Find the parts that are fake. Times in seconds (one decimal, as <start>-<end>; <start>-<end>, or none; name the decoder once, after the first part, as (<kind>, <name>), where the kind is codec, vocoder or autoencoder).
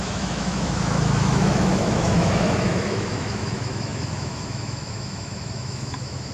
0.0-6.3 (autoencoder, DAC-VAE)